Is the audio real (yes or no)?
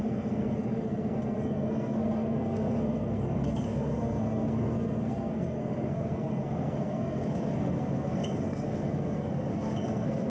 no